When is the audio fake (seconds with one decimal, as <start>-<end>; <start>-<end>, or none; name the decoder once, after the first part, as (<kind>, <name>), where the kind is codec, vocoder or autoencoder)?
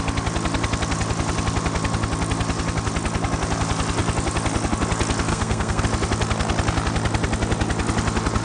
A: 5.3-5.8 (codec, SNAC)